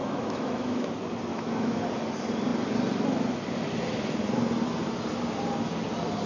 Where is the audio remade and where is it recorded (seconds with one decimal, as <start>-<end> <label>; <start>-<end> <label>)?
0.0-0.9 remade; 0.9-1.3 recorded; 1.3-1.8 remade; 1.8-6.3 recorded